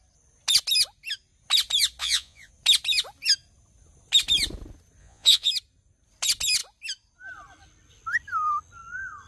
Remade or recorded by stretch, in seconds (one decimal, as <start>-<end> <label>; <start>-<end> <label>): 0.0-2.0 recorded; 2.0-2.5 remade; 2.5-5.0 recorded; 5.0-5.5 remade; 5.5-9.3 recorded